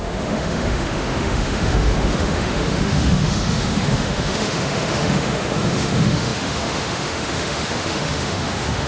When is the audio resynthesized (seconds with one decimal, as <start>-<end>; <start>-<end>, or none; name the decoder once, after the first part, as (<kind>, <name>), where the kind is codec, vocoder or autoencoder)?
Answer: 0.0-8.9 (autoencoder, DAC-VAE)